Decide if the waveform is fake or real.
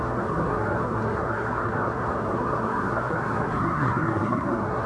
fake